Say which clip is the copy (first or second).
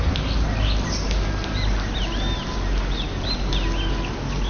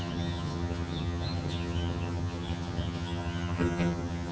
second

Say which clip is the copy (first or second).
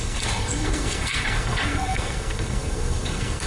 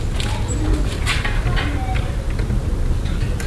first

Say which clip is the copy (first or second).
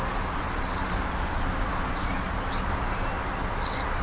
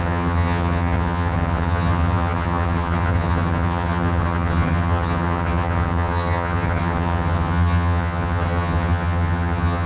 second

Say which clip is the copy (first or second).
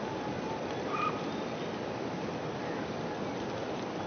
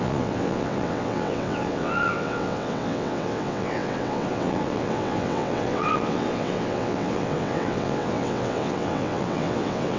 second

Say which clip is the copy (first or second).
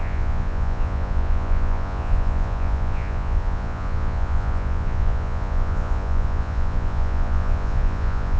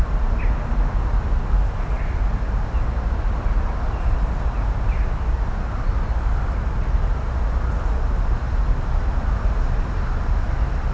first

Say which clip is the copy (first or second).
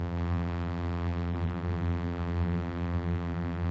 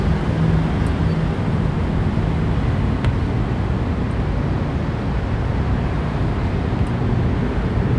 first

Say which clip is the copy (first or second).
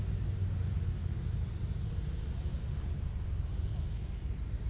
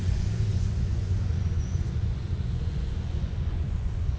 second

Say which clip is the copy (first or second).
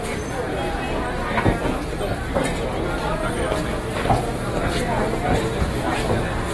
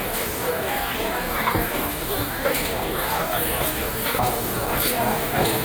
second